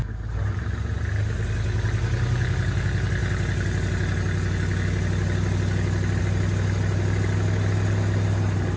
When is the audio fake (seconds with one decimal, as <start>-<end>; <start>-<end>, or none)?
none